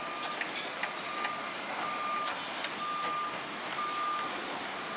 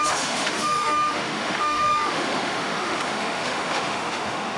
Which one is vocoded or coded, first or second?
second